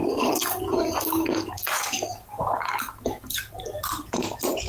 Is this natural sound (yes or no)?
no